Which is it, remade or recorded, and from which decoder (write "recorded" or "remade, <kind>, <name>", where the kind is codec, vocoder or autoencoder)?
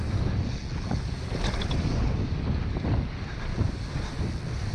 recorded